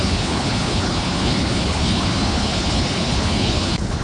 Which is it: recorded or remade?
remade